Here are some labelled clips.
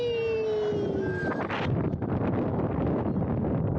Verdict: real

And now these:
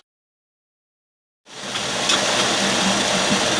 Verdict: real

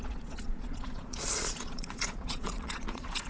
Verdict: fake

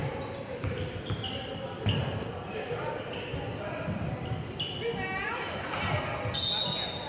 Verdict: real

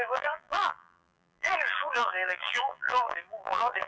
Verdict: fake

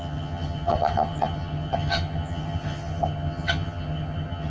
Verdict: fake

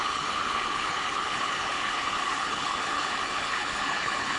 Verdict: fake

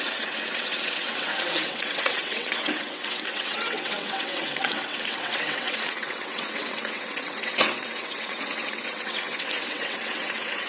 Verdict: fake